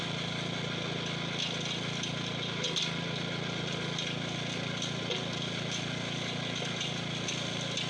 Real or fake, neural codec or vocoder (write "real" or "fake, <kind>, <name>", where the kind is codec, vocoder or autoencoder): real